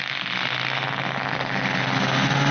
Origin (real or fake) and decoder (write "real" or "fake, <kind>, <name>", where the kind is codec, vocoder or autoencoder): real